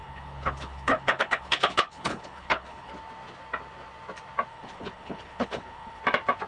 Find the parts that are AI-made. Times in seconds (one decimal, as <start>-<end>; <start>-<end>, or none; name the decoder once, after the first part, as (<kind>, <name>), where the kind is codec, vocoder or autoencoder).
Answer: 0.0-2.9 (codec, HILCodec); 4.5-6.0